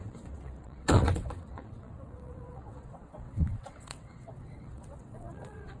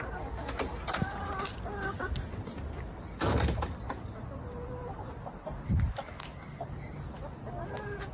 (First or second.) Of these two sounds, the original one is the second